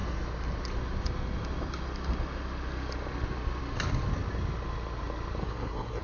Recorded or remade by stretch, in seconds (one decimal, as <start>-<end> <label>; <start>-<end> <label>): 0.0-5.4 recorded; 5.4-6.0 remade